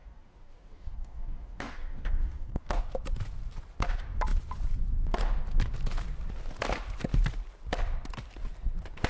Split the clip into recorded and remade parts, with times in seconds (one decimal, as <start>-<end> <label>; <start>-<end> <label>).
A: 0.0-2.8 remade; 2.8-9.1 recorded